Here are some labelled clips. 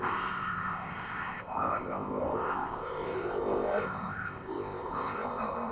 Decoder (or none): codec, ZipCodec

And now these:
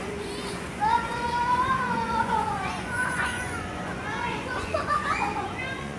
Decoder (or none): vocoder, Vocos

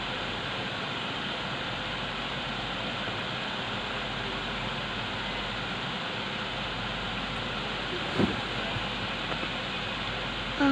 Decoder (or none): none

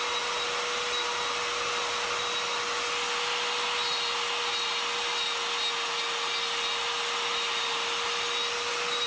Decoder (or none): none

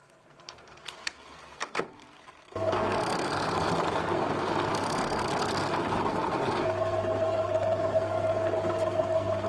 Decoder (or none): codec, SNAC